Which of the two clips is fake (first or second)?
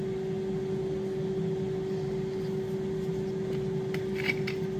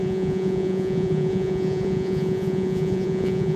second